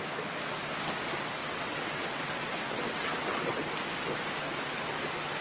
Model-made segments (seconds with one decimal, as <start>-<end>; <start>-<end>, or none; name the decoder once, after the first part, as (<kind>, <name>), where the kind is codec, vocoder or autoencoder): 1.4-3.6 (vocoder, WaveNeXt)